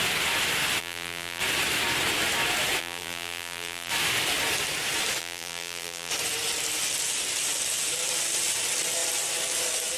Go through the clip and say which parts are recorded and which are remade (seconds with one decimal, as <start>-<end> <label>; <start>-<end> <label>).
0.0-0.8 recorded; 0.8-1.4 remade; 1.4-2.8 recorded; 2.8-3.9 remade; 3.9-5.2 recorded; 5.2-6.1 remade; 6.1-10.0 recorded

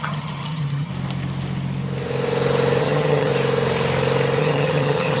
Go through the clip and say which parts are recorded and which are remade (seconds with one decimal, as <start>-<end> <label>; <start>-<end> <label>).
0.0-0.9 remade; 0.9-2.8 recorded; 2.8-3.3 remade; 3.3-4.4 recorded; 4.4-5.2 remade

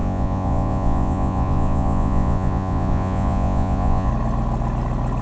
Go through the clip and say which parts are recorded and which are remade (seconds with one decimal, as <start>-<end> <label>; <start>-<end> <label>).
0.0-4.1 remade; 4.1-5.2 recorded

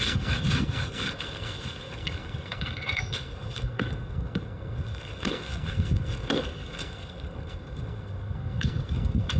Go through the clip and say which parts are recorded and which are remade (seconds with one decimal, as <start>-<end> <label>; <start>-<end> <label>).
0.0-9.4 remade

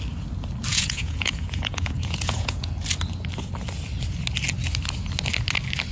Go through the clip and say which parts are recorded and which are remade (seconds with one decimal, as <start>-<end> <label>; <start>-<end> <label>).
0.0-0.7 recorded; 0.7-2.7 remade; 2.7-5.9 recorded